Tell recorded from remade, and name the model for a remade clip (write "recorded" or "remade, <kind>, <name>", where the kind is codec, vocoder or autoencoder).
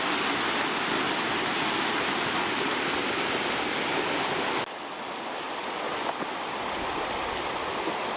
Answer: recorded